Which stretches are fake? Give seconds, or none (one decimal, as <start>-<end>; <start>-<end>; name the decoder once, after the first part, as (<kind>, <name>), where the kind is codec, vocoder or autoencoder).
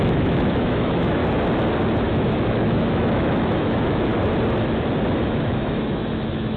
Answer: 0.0-1.2 (autoencoder, DAC-VAE); 2.0-4.1; 5.2-6.6